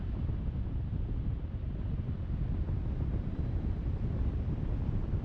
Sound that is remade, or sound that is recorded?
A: recorded